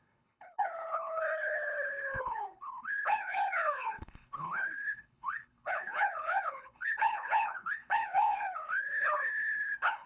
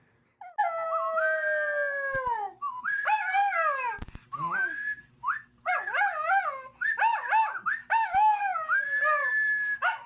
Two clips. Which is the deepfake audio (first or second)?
first